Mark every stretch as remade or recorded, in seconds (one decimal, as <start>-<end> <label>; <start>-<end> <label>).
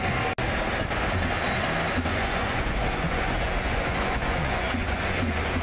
0.0-2.1 recorded; 2.1-5.6 remade